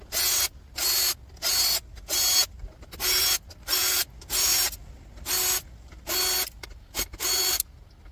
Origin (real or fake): real